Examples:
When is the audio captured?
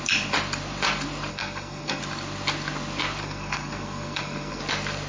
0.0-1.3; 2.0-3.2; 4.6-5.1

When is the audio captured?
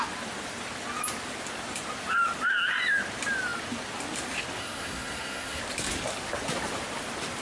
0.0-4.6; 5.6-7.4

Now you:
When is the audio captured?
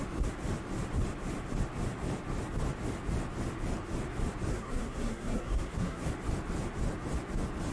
0.0-4.5; 6.1-7.7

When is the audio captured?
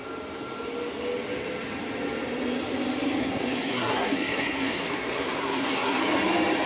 0.0-3.2; 6.0-6.7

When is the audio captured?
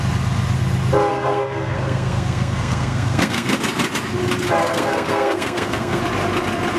0.0-1.1; 3.5-4.6; 6.0-6.8